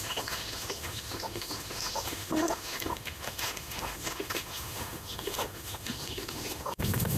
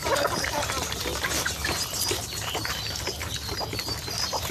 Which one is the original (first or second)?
second